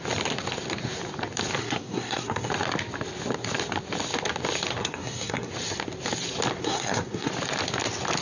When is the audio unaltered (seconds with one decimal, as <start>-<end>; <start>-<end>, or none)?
0.0-1.6; 2.5-4.8; 5.5-6.6; 7.3-8.2